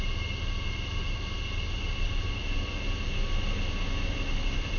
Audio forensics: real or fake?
real